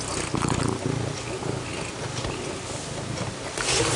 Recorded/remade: recorded